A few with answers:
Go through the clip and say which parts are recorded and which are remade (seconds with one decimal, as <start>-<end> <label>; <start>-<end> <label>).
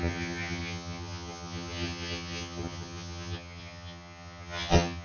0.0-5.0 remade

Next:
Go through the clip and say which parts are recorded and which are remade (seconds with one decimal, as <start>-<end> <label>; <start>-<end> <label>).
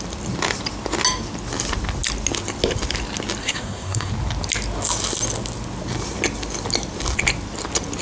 0.0-3.4 recorded; 3.4-4.1 remade; 4.1-8.0 recorded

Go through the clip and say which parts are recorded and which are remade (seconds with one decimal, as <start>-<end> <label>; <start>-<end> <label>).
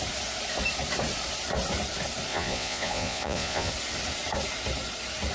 0.0-2.3 recorded; 2.3-3.7 remade; 3.7-5.3 recorded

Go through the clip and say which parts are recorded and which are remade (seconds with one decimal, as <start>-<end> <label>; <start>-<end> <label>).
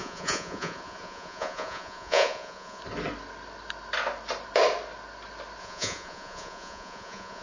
0.0-2.8 remade; 2.8-5.6 recorded; 5.6-7.4 remade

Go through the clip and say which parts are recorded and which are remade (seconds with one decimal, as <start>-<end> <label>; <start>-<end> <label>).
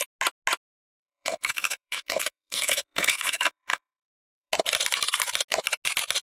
0.0-0.8 recorded; 0.8-4.5 remade; 4.5-6.2 recorded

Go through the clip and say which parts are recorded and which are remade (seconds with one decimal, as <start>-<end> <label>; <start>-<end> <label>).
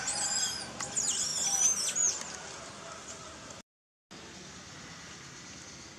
0.0-6.0 recorded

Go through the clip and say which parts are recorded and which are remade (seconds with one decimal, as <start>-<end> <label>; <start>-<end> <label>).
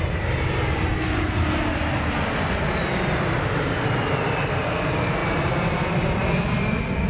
0.0-7.1 recorded